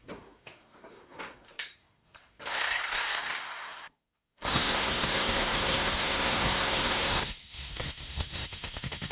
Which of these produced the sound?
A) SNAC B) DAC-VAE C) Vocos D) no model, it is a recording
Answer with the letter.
A